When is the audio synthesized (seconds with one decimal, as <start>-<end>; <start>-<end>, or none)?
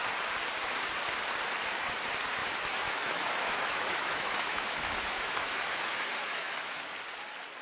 2.4-6.7